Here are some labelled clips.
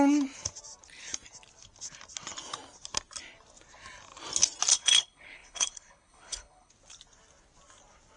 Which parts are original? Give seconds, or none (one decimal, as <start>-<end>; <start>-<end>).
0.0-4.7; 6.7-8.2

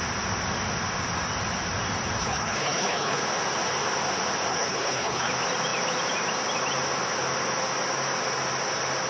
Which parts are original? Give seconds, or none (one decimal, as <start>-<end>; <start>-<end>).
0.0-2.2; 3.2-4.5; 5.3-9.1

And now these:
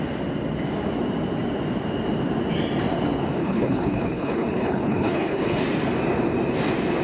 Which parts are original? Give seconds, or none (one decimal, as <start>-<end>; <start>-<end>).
0.0-3.4; 5.6-7.0

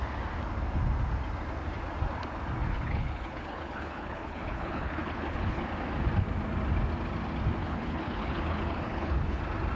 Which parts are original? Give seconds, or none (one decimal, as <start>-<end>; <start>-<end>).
0.0-2.6; 5.6-7.6; 9.4-9.8

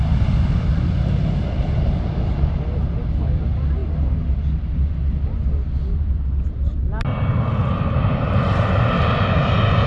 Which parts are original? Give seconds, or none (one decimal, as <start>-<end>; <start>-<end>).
0.0-9.9

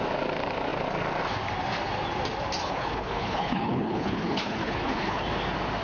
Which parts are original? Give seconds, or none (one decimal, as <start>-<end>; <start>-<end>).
0.0-2.6; 5.2-5.8